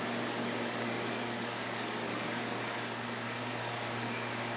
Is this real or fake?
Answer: fake